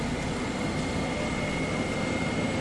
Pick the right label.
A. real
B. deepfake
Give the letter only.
A